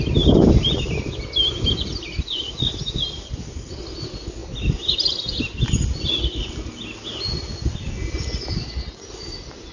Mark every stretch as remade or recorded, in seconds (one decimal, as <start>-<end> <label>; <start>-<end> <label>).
0.0-9.7 recorded